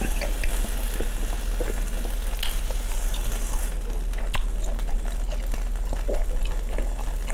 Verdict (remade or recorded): recorded